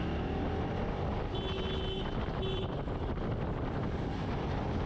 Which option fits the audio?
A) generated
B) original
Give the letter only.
B